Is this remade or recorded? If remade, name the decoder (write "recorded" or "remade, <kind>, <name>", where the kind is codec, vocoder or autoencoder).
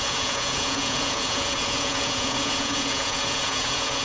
remade, vocoder, Vocos